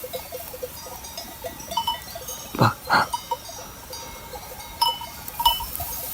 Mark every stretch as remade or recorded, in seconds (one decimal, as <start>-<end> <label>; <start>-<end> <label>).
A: 0.0-2.9 remade; 2.9-4.3 recorded; 4.3-6.1 remade